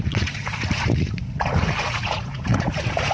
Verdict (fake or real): fake